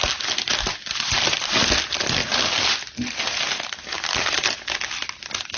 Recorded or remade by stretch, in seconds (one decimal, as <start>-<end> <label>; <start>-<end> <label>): 0.0-5.6 recorded